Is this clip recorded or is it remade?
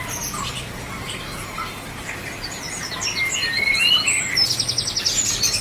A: recorded